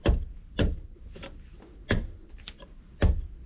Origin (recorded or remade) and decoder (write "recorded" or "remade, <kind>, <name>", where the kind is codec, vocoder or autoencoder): recorded